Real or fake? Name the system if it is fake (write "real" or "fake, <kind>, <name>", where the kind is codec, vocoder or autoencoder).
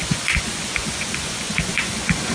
fake, vocoder, Vocos